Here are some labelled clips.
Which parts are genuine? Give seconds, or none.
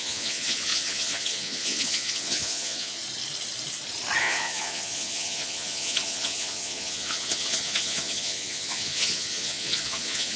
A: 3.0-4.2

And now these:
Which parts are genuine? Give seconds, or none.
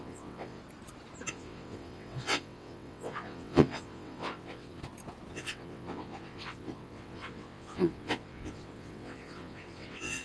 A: 0.6-1.3; 4.8-5.3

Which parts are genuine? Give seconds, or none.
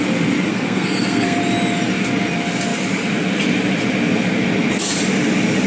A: 0.0-0.5; 1.4-5.7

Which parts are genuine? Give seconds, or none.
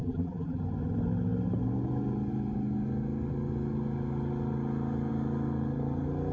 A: 0.6-6.3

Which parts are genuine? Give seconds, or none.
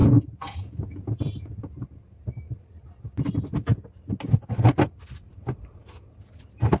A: 1.5-6.8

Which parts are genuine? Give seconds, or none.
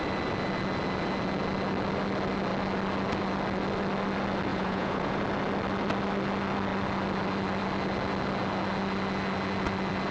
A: 0.0-4.5; 5.2-10.1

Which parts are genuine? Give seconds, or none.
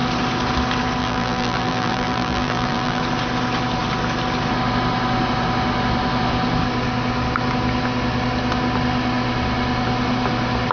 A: 0.0-1.0; 3.0-10.7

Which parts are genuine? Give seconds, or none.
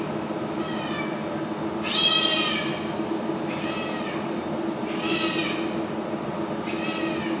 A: 0.7-2.1